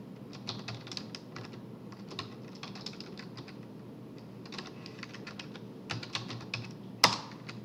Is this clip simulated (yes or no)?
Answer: no